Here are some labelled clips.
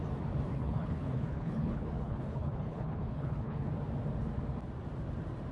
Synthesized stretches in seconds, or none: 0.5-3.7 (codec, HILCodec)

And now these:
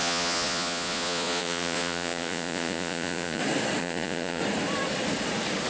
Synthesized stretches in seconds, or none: 0.0-3.4 (vocoder, Vocos); 3.8-4.4

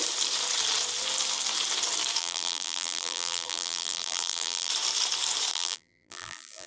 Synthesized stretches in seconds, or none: 2.2-4.7 (vocoder, BigVGAN v2); 5.5-6.7

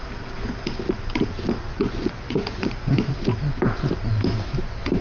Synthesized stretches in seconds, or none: 1.7-3.1 (vocoder, Vocos)

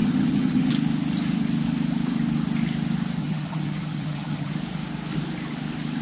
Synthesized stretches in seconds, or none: 0.0-0.7 (vocoder, HiFi-GAN); 3.2-4.5

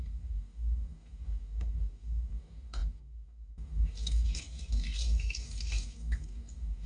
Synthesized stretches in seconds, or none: 0.0-6.9 (codec, DAC)